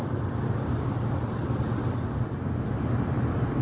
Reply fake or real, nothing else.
real